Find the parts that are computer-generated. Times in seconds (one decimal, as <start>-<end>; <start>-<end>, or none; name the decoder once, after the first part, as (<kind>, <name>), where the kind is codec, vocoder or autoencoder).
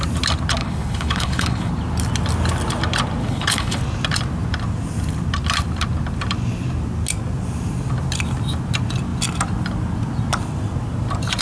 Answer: 0.6-1.7 (codec, HILCodec); 3.2-3.8